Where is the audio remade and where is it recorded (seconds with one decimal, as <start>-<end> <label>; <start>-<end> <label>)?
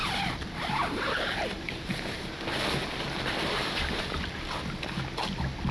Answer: 0.0-1.9 remade; 1.9-3.6 recorded; 3.6-4.3 remade; 4.3-5.7 recorded